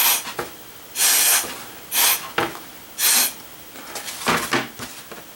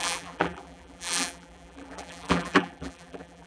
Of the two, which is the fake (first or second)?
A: second